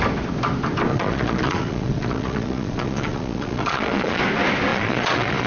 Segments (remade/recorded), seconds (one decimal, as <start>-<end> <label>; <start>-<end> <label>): 0.0-0.9 recorded; 0.9-4.2 remade; 4.2-4.7 recorded; 4.7-5.5 remade